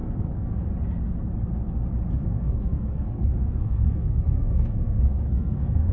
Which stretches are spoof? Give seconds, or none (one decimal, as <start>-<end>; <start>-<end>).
0.0-0.7; 2.2-5.9